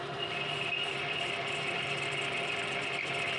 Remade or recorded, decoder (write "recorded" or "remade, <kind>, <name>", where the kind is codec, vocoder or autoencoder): remade, vocoder, BigVGAN v2